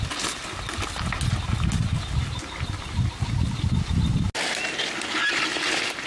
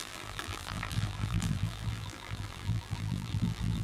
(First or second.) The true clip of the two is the first